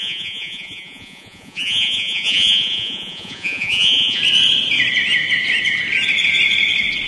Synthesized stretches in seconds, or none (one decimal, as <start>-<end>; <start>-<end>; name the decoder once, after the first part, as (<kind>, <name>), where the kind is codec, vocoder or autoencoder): 0.0-4.2 (vocoder, Vocos)

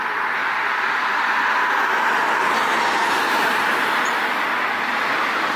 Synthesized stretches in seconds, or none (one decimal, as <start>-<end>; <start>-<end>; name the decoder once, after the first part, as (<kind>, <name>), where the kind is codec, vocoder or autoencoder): 3.0-3.6 (vocoder, BigVGAN v2)

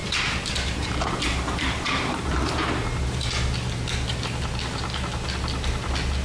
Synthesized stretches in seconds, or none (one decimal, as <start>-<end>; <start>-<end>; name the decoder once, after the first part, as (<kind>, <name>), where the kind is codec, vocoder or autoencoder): 0.0-3.3 (vocoder, BigVGAN v2)

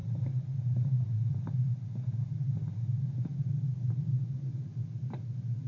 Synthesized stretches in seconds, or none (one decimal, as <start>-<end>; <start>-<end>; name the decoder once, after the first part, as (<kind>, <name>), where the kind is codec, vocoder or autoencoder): 3.3-3.9 (vocoder, BigVGAN v2)

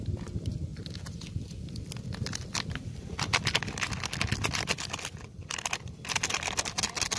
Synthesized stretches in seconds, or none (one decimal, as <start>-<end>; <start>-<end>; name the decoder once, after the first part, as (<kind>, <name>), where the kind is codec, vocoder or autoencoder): none

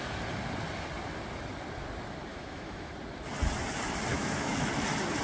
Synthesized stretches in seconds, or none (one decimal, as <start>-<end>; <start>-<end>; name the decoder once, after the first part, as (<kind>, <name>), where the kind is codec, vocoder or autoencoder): 2.3-2.9 (autoencoder, DAC-VAE); 4.1-4.7

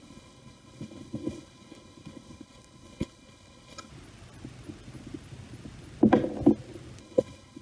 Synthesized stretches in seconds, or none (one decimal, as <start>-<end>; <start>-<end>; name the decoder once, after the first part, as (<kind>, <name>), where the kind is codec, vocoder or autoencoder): 0.0-3.9 (codec, HILCodec); 7.0-7.6

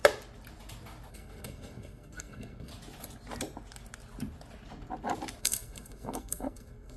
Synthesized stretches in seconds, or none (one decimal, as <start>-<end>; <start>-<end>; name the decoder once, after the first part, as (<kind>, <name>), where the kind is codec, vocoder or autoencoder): 1.1-2.7 (codec, SNAC); 5.4-7.0